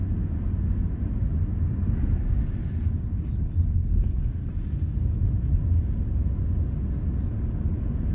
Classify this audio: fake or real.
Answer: real